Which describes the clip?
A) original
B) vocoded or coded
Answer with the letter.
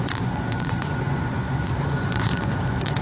B